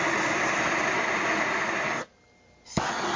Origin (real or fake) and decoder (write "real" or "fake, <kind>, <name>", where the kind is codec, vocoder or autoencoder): real